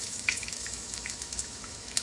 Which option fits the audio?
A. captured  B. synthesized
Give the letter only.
B